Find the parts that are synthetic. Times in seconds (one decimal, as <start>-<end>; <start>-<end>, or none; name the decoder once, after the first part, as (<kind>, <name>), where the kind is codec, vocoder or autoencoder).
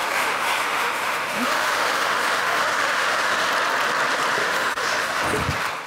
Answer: 0.0-3.5 (autoencoder, DAC-VAE); 4.4-5.2